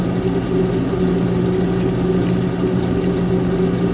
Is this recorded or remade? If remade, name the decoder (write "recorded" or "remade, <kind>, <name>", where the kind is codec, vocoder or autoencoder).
recorded